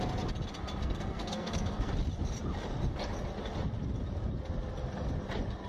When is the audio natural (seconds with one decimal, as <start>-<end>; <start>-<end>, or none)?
0.0-0.8; 1.9-5.7